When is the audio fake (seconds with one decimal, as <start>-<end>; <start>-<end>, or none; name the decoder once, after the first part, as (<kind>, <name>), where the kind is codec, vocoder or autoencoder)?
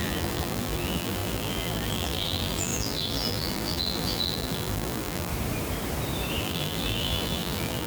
0.0-5.3 (vocoder, BigVGAN v2); 6.4-7.9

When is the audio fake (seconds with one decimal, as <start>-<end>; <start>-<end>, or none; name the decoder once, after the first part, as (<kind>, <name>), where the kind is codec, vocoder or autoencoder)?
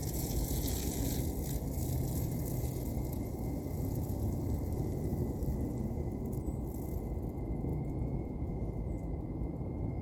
0.0-1.2 (vocoder, Vocos); 7.7-8.5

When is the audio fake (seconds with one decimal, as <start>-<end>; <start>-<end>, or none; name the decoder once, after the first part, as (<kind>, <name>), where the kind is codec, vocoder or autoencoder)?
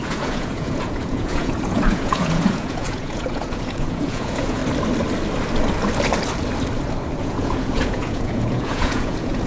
0.0-4.6 (vocoder, Vocos); 7.2-9.5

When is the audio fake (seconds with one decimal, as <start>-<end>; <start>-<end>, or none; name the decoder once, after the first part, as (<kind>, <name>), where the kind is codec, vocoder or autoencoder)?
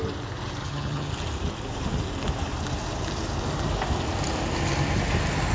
0.6-1.1 (vocoder, HiFi-GAN)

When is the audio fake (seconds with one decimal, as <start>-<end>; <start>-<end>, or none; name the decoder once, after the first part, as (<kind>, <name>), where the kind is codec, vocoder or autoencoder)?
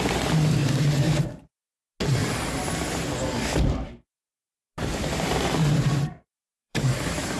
0.6-1.3 (vocoder, BigVGAN v2); 4.3-7.4